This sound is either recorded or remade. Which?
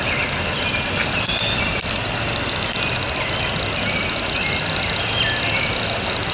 recorded